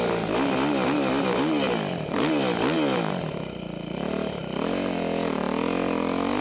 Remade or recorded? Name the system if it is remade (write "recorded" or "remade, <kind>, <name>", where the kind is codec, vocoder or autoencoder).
recorded